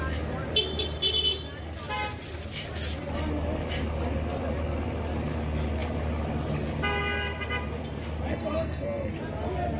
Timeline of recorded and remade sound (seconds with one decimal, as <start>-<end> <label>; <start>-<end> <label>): 0.0-8.3 recorded; 8.3-9.1 remade; 9.1-9.8 recorded